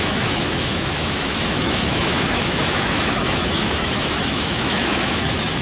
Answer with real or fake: fake